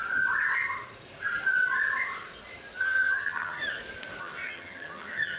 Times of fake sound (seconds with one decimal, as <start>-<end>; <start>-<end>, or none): 2.8-3.6; 4.2-5.4